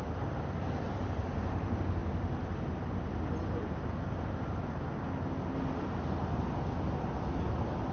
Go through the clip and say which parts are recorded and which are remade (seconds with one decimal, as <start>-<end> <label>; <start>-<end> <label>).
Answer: 0.0-1.0 recorded; 1.0-1.6 remade; 1.6-7.9 recorded